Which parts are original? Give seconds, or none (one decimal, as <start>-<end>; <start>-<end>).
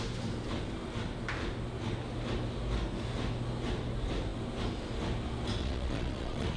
0.0-5.6